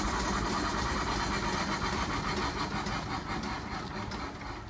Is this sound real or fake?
real